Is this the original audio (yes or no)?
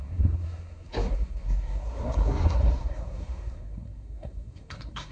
no